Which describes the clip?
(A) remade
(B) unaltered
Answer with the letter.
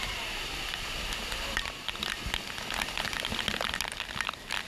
B